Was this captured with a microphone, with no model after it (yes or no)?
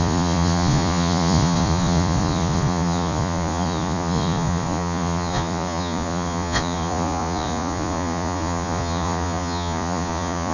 no